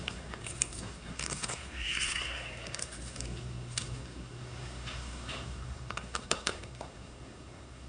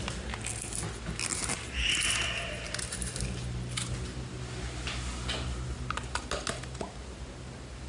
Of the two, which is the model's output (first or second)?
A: first